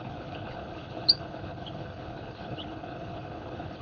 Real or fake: fake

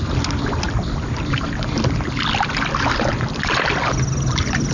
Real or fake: real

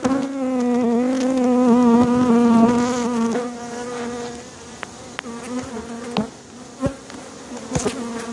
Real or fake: real